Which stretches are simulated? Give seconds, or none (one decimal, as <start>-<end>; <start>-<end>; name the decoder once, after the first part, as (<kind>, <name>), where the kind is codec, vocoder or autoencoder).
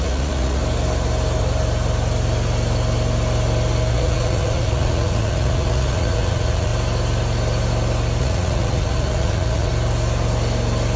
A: 0.0-0.6 (vocoder, Vocos); 3.9-6.7; 8.2-9.7